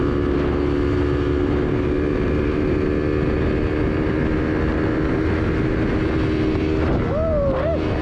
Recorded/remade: recorded